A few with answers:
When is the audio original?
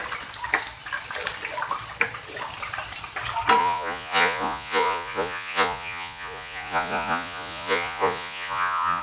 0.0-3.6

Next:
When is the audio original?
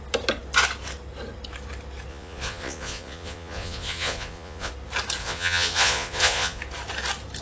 0.0-2.1; 4.7-5.2; 6.6-7.4